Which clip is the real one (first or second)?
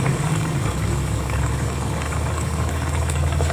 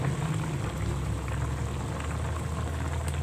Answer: second